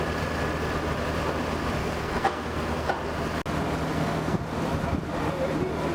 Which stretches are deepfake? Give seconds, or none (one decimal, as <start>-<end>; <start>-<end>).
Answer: 1.8-2.9; 3.9-4.4